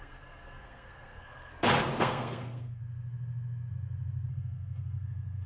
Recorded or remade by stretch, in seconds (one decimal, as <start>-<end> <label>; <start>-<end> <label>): 0.0-1.5 remade; 1.5-2.0 recorded; 2.0-2.8 remade; 2.8-4.3 recorded; 4.3-5.5 remade